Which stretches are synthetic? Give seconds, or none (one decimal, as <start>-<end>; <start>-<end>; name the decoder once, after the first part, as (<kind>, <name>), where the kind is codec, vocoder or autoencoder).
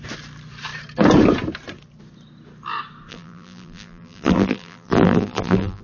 3.1-5.8 (vocoder, BigVGAN v2)